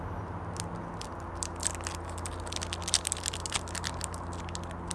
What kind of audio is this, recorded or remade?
recorded